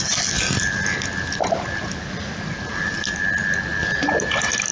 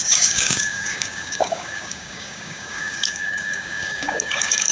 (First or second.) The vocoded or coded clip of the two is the second